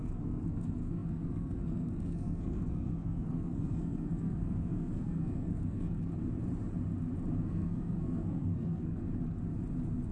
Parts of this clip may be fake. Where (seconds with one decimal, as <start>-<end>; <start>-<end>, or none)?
0.0-6.1; 7.4-9.0